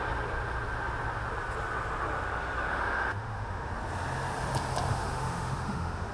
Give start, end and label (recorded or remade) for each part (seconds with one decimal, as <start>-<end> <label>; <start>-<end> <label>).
0.0-2.7 recorded; 2.7-3.7 remade; 3.7-4.9 recorded; 4.9-6.1 remade